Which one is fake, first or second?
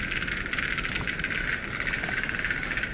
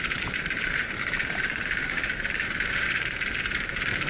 second